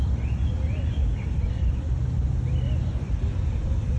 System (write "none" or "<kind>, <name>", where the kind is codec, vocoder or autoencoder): none